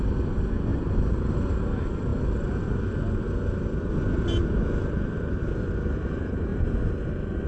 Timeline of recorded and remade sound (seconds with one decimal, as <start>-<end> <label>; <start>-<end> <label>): 0.0-0.7 recorded; 0.7-1.6 remade; 1.6-4.4 recorded; 4.4-5.7 remade; 5.7-7.5 recorded